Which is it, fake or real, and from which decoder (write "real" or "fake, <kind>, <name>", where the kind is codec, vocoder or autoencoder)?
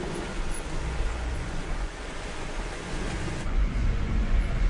fake, vocoder, Vocos